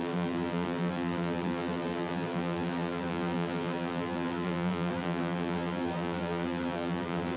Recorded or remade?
remade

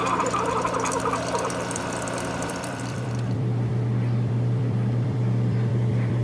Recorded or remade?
remade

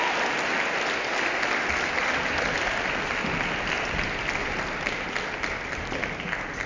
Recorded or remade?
recorded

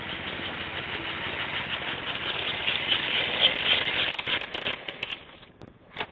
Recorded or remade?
recorded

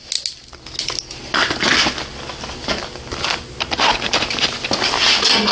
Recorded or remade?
recorded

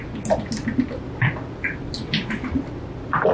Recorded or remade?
recorded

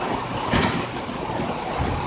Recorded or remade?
remade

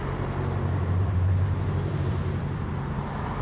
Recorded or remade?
remade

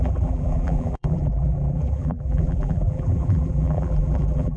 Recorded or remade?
remade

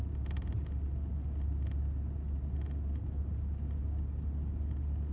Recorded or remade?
recorded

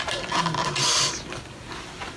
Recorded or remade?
recorded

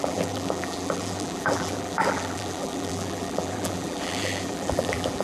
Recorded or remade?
remade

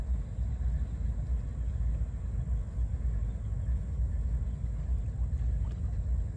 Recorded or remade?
recorded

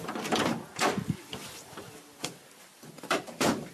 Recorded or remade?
remade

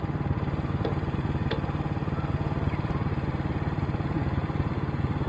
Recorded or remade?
remade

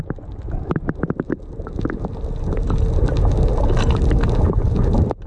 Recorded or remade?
recorded